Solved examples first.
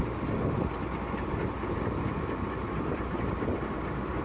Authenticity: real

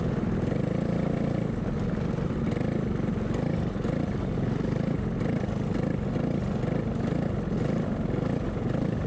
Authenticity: real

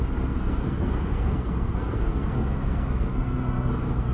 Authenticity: fake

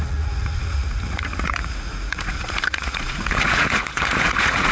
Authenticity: fake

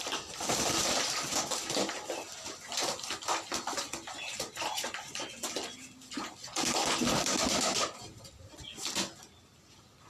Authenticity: real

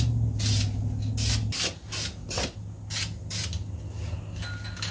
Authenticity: real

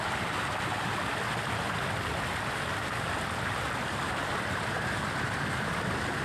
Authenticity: real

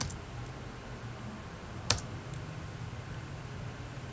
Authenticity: real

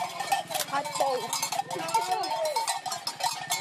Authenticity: real